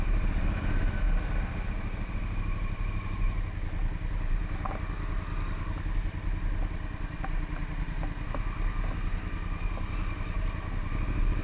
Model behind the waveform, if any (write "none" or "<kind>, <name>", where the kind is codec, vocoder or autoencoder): none